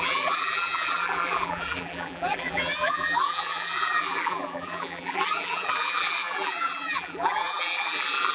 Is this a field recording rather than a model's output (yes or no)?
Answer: no